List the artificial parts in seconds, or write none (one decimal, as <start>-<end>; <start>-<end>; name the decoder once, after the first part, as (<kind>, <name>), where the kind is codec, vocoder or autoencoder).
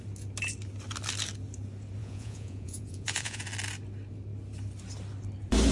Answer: 2.0-3.4 (vocoder, Vocos)